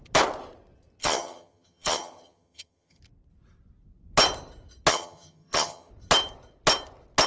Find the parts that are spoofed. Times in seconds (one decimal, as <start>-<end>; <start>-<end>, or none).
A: 1.0-3.0; 4.9-5.9